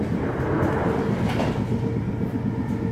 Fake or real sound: real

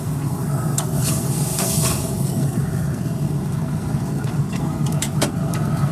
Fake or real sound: fake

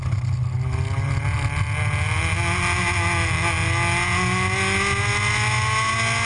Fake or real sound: real